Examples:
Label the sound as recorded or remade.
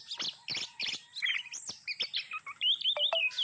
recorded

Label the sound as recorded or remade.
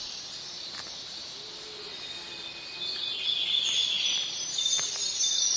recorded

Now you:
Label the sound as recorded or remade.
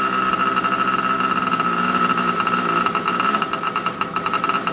recorded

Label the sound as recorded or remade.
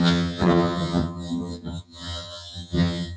remade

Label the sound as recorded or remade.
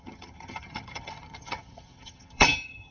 remade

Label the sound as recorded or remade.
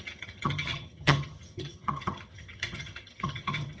remade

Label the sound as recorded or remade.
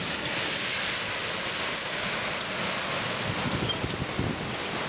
recorded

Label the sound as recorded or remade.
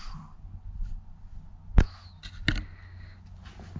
recorded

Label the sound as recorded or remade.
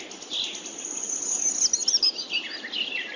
recorded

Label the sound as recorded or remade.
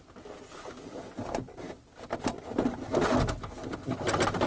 recorded